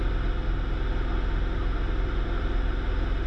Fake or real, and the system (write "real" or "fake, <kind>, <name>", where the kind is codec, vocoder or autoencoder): real